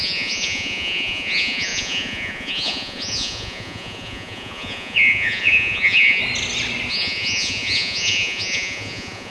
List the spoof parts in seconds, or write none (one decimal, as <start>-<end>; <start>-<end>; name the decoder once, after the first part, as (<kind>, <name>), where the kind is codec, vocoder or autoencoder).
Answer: 0.0-6.2 (vocoder, Vocos); 6.9-9.3